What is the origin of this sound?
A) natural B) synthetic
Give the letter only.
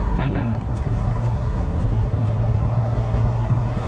B